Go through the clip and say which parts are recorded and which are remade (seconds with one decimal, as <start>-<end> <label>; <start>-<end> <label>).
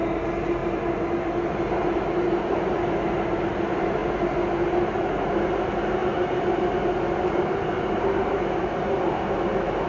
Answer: 0.0-9.9 recorded